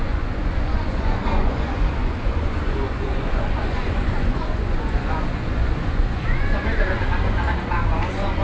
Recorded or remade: remade